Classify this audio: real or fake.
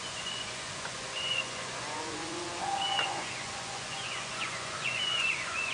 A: fake